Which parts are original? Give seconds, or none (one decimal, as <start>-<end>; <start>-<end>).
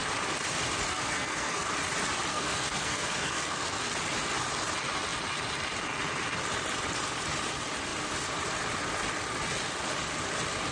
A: 0.0-0.9; 1.7-2.3; 3.9-10.7